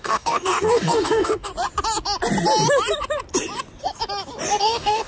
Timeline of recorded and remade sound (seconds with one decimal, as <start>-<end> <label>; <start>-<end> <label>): 0.0-1.5 remade; 1.5-4.6 recorded; 4.6-5.1 remade